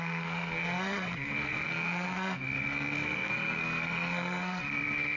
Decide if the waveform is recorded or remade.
remade